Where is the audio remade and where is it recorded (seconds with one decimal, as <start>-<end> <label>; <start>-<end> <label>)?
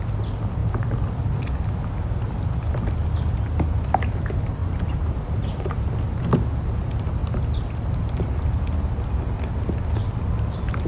0.0-0.6 recorded; 0.6-1.2 remade; 1.2-4.6 recorded; 4.6-5.9 remade; 5.9-10.9 recorded